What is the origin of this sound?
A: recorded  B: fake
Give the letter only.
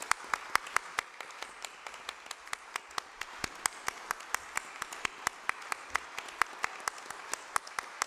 A